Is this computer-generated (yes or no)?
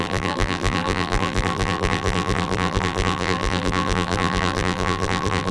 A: yes